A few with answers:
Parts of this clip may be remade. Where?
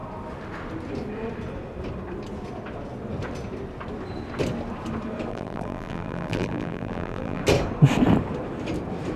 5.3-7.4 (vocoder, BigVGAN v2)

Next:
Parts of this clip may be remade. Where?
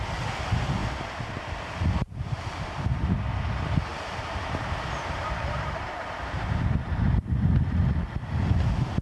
3.9-7.2 (vocoder, BigVGAN v2)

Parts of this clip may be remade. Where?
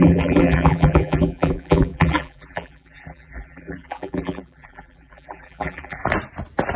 0.0-6.0 (vocoder, BigVGAN v2)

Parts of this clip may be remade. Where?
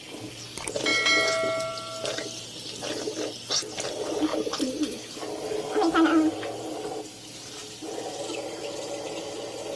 4.3-5.3 (vocoder, BigVGAN v2); 7.6-8.2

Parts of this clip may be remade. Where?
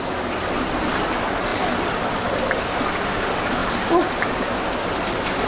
none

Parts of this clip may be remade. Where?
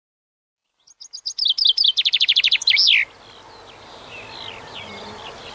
none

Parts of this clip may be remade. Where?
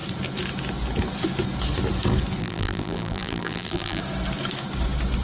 2.4-4.0 (vocoder, BigVGAN v2)